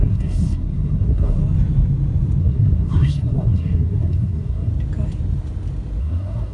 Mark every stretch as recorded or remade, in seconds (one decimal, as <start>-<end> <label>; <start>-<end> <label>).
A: 0.0-1.4 remade; 1.4-2.4 recorded; 2.4-4.7 remade; 4.7-6.0 recorded; 6.0-6.5 remade